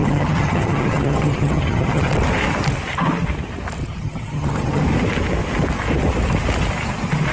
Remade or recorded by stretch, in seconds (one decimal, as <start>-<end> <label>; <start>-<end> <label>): 0.0-2.1 remade; 2.1-3.8 recorded; 3.8-4.8 remade; 4.8-7.3 recorded